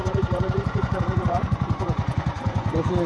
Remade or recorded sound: remade